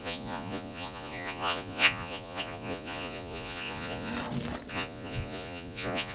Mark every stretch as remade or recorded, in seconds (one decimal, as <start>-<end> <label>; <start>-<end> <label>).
0.0-4.1 remade; 4.1-4.7 recorded; 4.7-6.1 remade